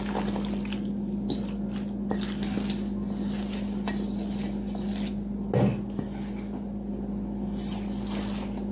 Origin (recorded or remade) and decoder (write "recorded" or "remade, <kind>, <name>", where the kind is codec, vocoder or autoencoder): recorded